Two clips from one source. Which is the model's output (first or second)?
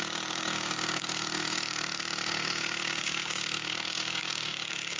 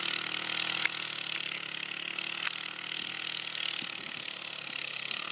first